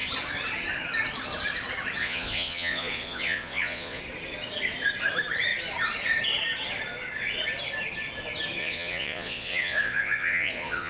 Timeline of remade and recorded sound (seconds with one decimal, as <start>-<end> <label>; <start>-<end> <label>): 0.0-2.0 recorded; 2.0-4.0 remade; 4.0-8.6 recorded; 8.6-10.9 remade